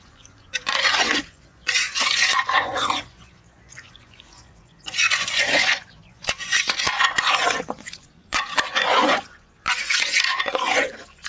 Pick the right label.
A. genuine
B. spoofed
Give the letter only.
B